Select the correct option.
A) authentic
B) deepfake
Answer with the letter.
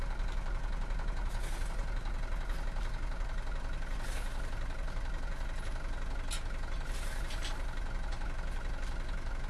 A